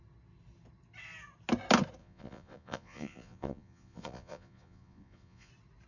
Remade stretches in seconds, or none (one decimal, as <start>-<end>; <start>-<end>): 2.0-5.5